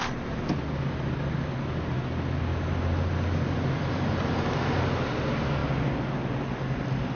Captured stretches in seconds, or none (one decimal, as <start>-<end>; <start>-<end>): 0.0-7.2